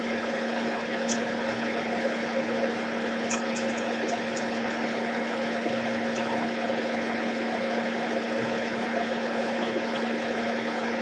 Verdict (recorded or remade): remade